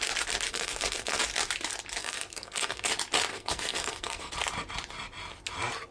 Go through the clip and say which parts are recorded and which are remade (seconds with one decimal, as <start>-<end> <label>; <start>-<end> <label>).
0.0-0.5 recorded; 0.5-1.2 remade; 1.2-2.0 recorded; 2.0-2.9 remade; 2.9-3.3 recorded; 3.3-4.3 remade; 4.3-5.9 recorded